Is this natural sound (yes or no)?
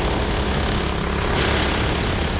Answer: yes